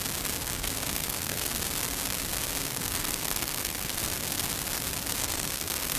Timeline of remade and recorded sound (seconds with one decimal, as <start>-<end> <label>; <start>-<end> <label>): 0.0-0.4 recorded; 0.4-1.6 remade; 1.6-2.7 recorded; 2.7-4.1 remade; 4.1-5.2 recorded; 5.2-6.0 remade